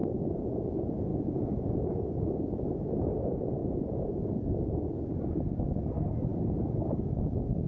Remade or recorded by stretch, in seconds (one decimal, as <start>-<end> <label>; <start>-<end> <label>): 0.0-1.1 recorded; 1.1-1.9 remade; 1.9-7.7 recorded